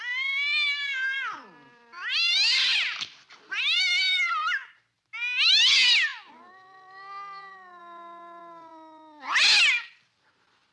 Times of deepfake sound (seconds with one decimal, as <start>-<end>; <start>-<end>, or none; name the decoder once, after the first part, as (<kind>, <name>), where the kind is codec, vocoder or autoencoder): 6.1-7.8 (vocoder, BigVGAN v2)